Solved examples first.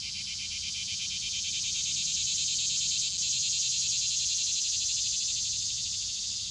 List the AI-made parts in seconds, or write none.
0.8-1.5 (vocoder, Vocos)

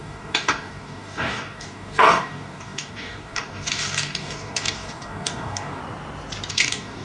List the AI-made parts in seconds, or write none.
0.0-5.8 (codec, DAC); 6.5-7.0

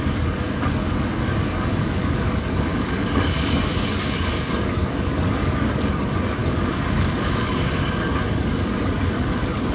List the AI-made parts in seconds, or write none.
0.0-9.7 (codec, DAC)

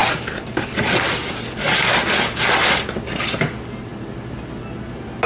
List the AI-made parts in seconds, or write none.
none

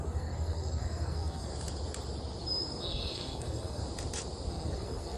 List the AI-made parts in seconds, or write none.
0.0-1.5 (codec, SNAC); 2.8-3.8; 4.5-5.2